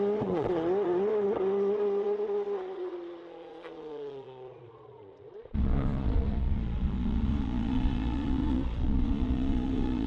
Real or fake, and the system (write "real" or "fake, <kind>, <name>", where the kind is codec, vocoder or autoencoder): fake, vocoder, Vocos